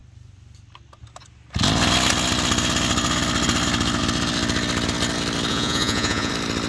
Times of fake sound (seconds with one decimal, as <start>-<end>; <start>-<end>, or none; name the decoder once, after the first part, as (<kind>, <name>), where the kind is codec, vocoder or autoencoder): 5.5-6.3 (vocoder, Vocos)